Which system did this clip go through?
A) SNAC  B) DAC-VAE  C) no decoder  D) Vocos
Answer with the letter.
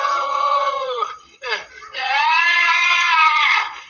D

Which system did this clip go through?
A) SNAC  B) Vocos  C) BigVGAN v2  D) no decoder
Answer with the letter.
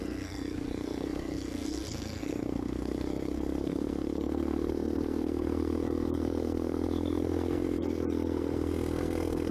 A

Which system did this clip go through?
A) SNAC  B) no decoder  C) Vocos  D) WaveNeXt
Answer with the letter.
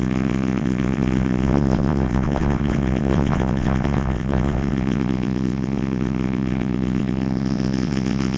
D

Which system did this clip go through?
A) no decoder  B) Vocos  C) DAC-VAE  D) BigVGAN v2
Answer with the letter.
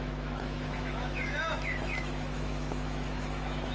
C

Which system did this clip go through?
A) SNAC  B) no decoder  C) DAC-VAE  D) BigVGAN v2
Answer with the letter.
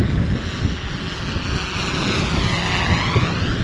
B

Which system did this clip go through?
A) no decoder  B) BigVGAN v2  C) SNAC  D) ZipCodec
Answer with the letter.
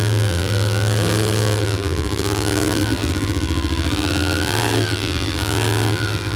B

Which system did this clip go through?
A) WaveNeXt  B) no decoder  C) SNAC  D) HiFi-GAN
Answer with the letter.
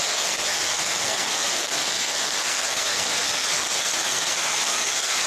C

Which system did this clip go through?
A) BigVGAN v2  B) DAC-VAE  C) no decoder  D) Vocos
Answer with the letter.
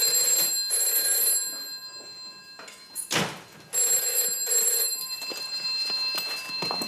C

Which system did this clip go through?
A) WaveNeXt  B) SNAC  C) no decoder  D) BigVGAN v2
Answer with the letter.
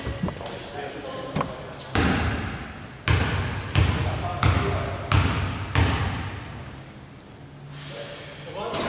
C